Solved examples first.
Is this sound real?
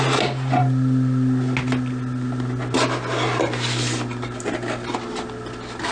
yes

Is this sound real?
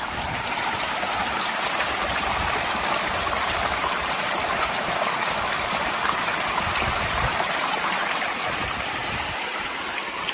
no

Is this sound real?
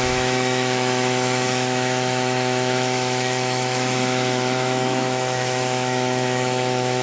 no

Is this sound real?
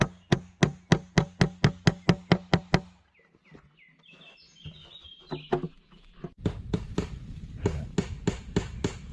yes